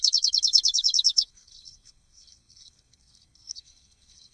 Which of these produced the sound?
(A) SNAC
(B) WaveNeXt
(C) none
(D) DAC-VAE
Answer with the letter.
A